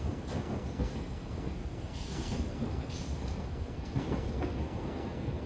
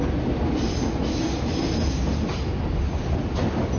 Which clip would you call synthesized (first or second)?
first